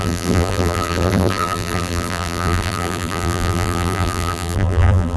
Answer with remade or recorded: remade